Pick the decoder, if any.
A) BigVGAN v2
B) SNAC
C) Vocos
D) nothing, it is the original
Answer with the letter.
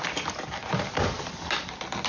D